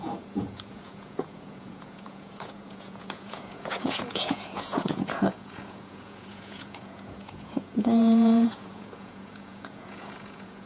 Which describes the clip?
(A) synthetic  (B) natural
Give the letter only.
A